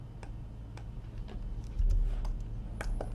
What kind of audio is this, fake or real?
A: real